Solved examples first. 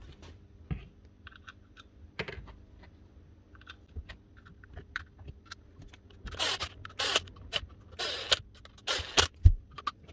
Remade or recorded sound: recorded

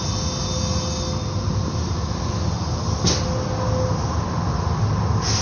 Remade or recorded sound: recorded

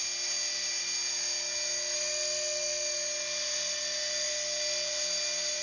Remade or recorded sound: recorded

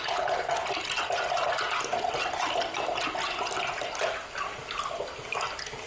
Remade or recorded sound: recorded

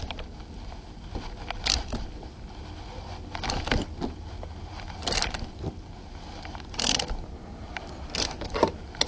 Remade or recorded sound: recorded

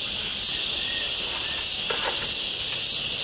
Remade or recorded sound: recorded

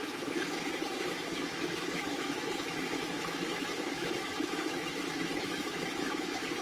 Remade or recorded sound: remade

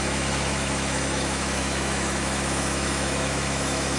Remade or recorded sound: remade